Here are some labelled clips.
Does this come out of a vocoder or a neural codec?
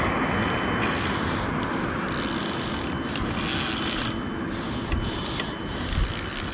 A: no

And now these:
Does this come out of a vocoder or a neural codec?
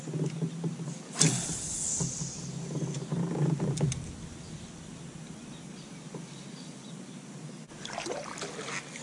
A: no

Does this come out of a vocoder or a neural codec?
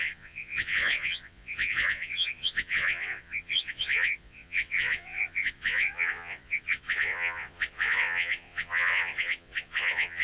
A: yes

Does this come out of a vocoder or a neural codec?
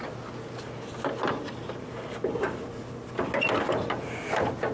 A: no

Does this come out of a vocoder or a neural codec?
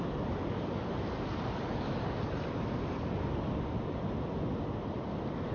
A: no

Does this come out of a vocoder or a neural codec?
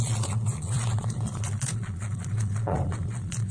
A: yes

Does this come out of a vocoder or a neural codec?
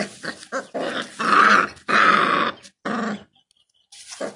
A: no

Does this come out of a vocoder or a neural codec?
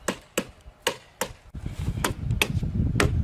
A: no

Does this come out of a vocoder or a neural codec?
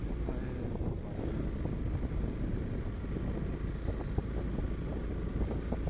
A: no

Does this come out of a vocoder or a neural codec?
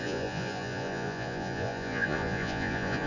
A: yes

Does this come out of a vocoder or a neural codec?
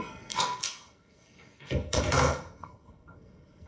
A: yes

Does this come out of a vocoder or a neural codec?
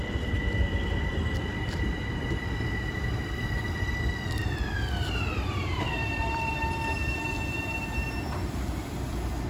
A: yes